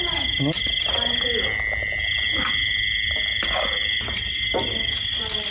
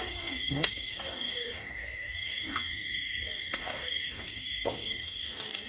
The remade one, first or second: second